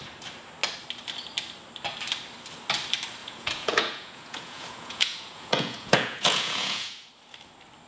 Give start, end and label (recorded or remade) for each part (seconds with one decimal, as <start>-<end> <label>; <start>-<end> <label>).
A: 0.0-3.2 recorded; 3.2-7.1 remade; 7.1-7.9 recorded